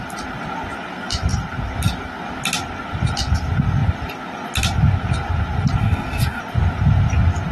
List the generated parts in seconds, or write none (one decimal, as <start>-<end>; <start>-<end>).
5.8-6.4